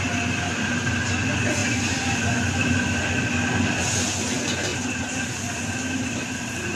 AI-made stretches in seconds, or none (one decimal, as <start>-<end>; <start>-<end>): 1.6-2.2; 4.7-6.8